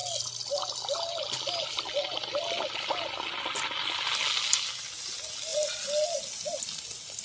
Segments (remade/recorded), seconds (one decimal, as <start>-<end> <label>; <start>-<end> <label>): 0.0-7.2 recorded